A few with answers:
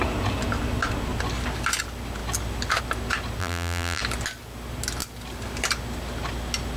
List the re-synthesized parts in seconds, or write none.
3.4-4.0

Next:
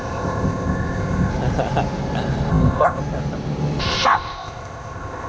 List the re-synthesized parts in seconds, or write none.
0.0-1.3; 2.5-3.0; 3.8-5.3

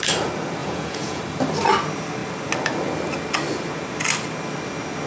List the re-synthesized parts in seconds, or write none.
0.6-1.2

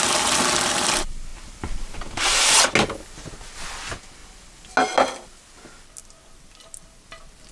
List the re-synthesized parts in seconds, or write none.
1.3-2.7

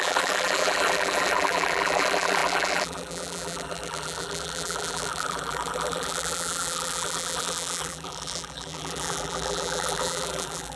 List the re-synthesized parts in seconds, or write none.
0.0-10.8